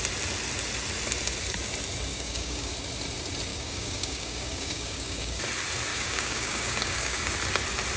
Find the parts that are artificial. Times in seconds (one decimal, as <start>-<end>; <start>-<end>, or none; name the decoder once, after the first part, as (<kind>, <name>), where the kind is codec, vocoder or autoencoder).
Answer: 2.1-2.7 (codec, DAC); 3.5-5.4; 5.9-7.3